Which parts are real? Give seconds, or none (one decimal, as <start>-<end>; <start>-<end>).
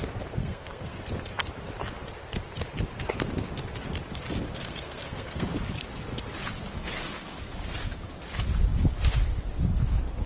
0.0-0.4; 1.0-4.6; 5.5-10.3